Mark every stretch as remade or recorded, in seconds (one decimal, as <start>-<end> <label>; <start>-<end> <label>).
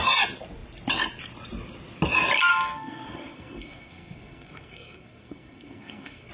0.0-2.5 recorded; 2.5-6.3 remade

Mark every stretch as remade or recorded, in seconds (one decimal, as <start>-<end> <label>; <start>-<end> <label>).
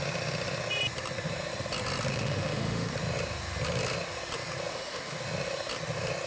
0.0-2.1 recorded; 2.1-2.9 remade; 2.9-4.7 recorded; 4.7-5.2 remade; 5.2-6.3 recorded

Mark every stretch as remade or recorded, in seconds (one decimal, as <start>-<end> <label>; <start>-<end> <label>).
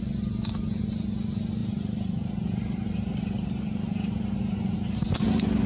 0.0-1.6 recorded; 1.6-5.0 remade; 5.0-5.7 recorded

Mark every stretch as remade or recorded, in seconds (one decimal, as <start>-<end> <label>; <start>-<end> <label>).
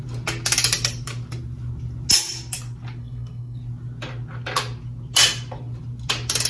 0.0-3.0 recorded; 3.0-3.6 remade; 3.6-6.5 recorded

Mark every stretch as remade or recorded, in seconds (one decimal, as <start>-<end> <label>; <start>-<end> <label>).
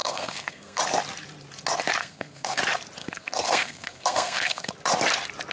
0.0-0.8 remade; 0.8-2.0 recorded; 2.0-2.6 remade; 2.6-3.0 recorded; 3.0-4.7 remade; 4.7-5.5 recorded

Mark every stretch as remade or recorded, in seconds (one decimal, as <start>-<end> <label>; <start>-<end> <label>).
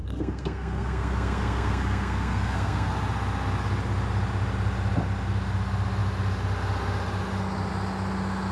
0.0-2.9 remade; 2.9-8.5 recorded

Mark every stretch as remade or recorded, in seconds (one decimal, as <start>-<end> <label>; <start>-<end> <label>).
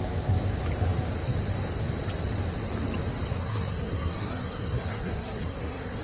0.0-3.3 recorded; 3.3-6.0 remade